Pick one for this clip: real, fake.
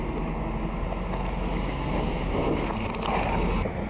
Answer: real